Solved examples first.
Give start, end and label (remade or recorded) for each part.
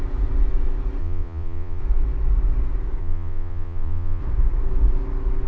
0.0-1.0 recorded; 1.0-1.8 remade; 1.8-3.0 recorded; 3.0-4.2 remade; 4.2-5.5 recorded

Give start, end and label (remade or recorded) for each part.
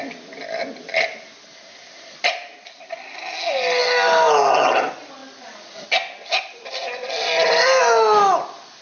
0.0-8.8 recorded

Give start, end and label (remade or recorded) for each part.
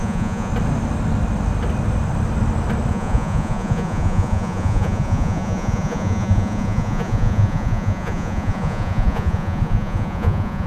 0.0-0.5 remade; 0.5-2.9 recorded; 2.9-10.7 remade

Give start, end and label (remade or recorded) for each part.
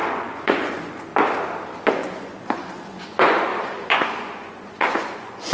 0.0-1.1 remade; 1.1-1.9 recorded; 1.9-5.5 remade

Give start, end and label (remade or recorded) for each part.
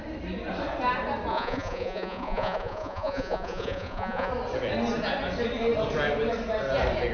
0.0-1.3 recorded; 1.3-4.3 remade; 4.3-7.1 recorded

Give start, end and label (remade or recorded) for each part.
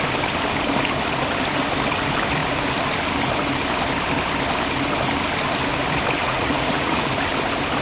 0.0-6.2 recorded; 6.2-7.2 remade; 7.2-7.8 recorded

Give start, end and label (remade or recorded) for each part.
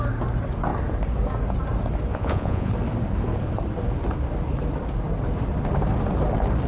0.0-2.1 recorded; 2.1-2.7 remade; 2.7-6.7 recorded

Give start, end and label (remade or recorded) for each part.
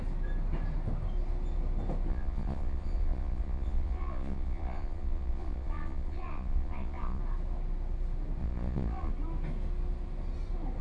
0.0-2.1 recorded; 2.1-7.2 remade; 7.2-8.4 recorded; 8.4-9.1 remade; 9.1-10.8 recorded